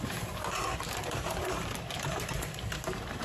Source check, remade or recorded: remade